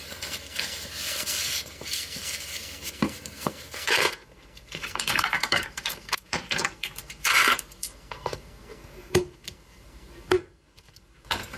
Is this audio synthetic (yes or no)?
yes